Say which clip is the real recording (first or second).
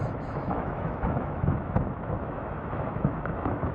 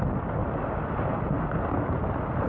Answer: second